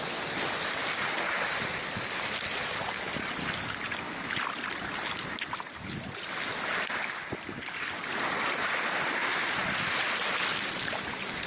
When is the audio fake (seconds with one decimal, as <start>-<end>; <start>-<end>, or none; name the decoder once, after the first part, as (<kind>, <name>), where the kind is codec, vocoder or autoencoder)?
none